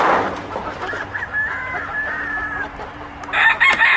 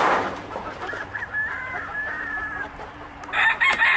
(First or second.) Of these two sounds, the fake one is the second